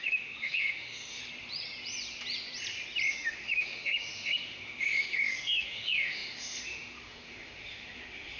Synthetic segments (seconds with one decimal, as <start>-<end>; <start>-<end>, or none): 0.0-1.2; 3.1-8.4